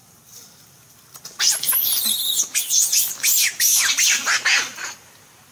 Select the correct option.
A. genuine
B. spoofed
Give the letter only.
A